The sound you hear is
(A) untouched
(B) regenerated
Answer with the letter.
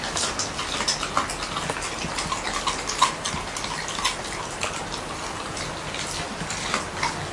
A